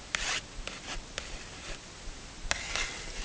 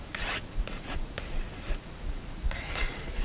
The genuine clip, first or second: first